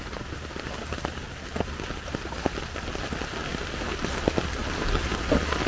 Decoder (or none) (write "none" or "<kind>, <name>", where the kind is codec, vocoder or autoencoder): none